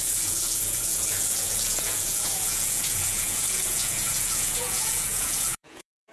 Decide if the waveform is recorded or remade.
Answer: remade